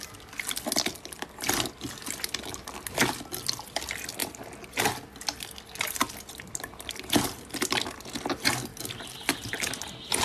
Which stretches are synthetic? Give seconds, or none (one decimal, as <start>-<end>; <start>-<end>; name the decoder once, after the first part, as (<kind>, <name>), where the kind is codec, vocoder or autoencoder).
none